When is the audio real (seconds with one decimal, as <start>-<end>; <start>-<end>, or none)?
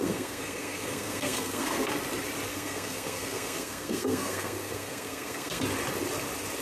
1.9-2.5; 5.6-6.6